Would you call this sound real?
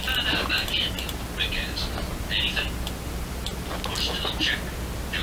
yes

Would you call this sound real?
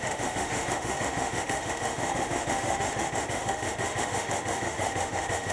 no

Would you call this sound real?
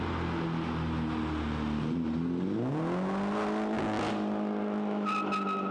yes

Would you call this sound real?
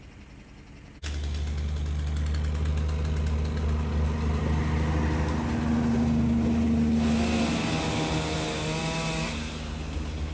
yes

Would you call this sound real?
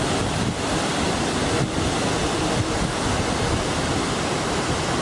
yes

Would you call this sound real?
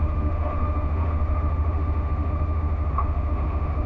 no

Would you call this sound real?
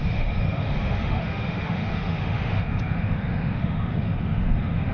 no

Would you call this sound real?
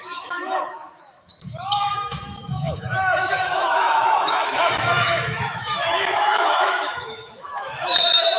no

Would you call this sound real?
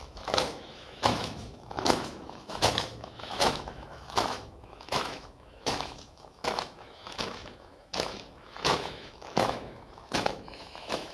no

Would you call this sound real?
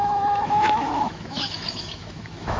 no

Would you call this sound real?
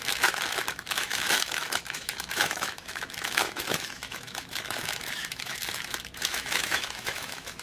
no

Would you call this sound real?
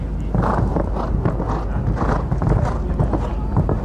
yes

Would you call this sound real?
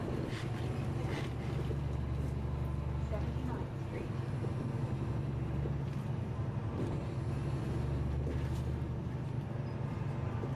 yes